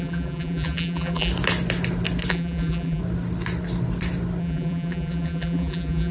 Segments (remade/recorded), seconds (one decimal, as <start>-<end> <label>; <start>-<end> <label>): 0.0-1.3 remade; 1.3-2.3 recorded; 2.3-3.0 remade; 3.0-4.4 recorded; 4.4-6.1 remade